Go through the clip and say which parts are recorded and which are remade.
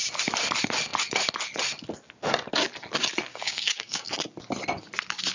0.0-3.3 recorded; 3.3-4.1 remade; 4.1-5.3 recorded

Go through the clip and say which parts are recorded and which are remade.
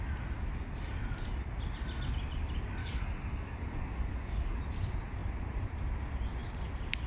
0.0-2.8 recorded; 2.8-4.6 remade; 4.6-7.1 recorded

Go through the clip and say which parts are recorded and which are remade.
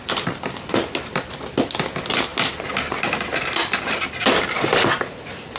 0.0-5.6 recorded